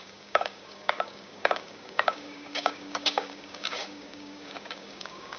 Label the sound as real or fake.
fake